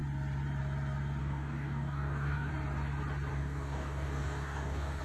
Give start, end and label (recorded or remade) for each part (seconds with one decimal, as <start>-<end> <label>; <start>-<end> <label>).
0.0-1.2 recorded; 1.2-2.5 remade; 2.5-3.3 recorded; 3.3-5.0 remade